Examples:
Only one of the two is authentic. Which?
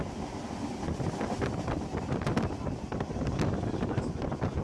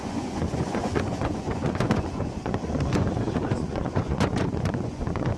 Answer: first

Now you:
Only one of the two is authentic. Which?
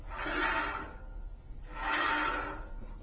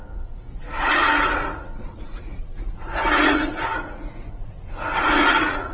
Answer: first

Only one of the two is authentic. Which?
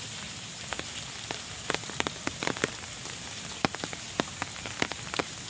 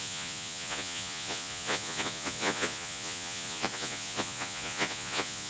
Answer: first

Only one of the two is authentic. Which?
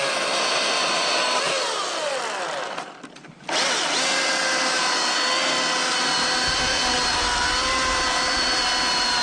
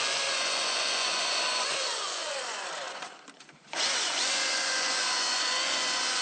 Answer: first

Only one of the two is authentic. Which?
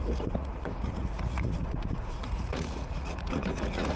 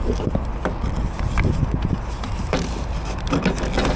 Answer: second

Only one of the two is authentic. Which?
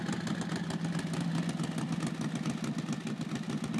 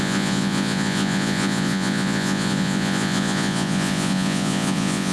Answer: first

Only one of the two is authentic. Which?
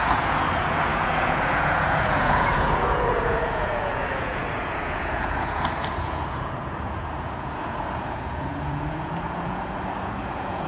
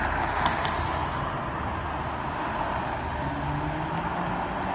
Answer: second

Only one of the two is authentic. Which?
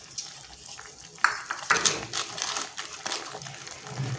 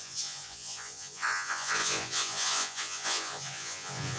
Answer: first